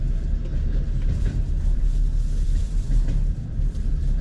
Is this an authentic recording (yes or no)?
no